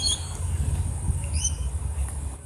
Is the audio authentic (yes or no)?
no